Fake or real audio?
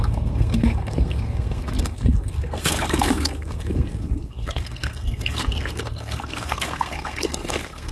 fake